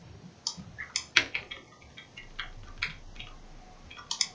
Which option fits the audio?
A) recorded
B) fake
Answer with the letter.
A